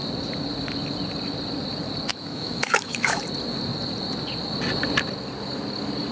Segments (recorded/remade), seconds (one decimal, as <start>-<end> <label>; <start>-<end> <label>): 0.0-2.1 recorded; 2.1-3.2 remade; 3.2-6.1 recorded